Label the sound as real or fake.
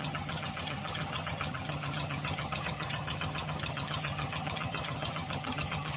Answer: fake